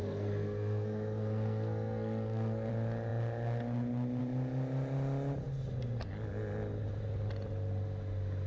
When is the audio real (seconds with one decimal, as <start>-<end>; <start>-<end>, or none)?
2.7-8.5